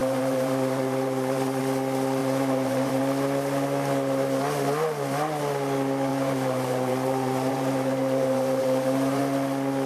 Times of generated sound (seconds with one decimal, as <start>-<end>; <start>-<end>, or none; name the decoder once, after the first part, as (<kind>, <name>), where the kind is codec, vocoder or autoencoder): 0.0-1.6 (vocoder, BigVGAN v2); 2.2-3.0; 6.1-9.2